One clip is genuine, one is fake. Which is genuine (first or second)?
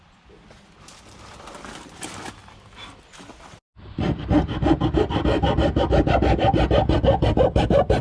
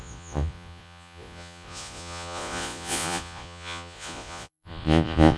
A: first